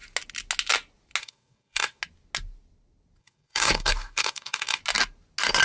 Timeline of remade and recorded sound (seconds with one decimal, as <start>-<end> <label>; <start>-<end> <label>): 0.0-1.2 recorded; 1.2-2.0 remade; 2.0-3.2 recorded; 3.2-4.8 remade; 4.8-5.6 recorded